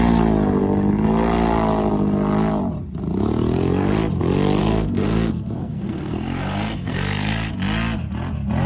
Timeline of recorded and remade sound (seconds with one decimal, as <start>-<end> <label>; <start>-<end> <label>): 0.0-4.6 recorded; 4.6-7.5 remade; 7.5-8.7 recorded